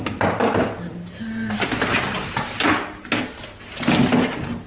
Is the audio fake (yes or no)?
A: no